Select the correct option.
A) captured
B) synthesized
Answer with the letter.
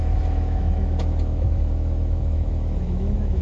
B